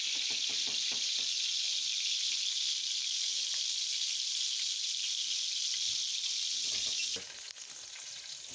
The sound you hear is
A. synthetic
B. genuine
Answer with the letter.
B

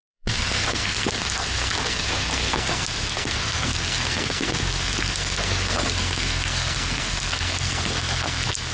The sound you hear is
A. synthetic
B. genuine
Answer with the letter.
A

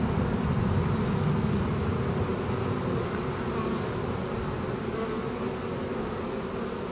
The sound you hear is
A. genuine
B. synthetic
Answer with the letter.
A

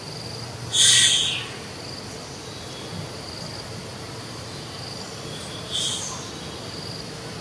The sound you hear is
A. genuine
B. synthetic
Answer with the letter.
A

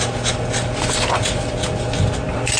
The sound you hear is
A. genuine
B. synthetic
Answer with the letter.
A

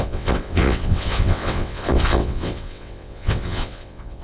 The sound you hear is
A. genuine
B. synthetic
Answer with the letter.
B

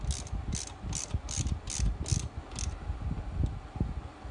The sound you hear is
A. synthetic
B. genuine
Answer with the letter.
B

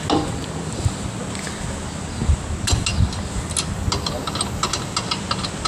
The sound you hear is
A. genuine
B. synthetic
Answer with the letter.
A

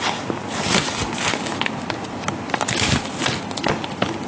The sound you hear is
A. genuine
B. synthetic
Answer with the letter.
A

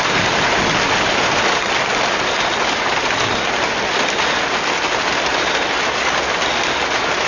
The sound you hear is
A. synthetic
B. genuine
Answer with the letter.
B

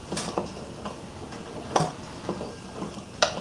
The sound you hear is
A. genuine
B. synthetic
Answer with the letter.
A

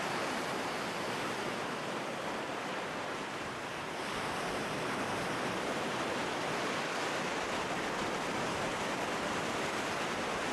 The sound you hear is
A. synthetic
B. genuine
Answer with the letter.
B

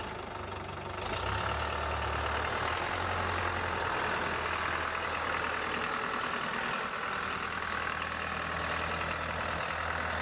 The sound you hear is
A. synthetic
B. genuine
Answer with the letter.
B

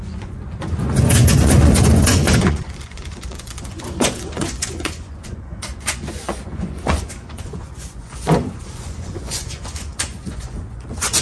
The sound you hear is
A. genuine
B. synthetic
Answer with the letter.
B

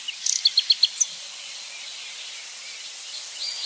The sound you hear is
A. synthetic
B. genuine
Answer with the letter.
B